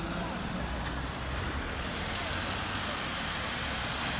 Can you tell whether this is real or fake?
real